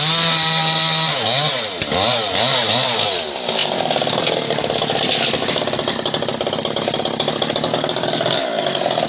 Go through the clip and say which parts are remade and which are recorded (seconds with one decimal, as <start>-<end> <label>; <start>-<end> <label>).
0.0-9.1 recorded